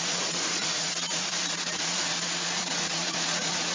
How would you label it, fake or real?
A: fake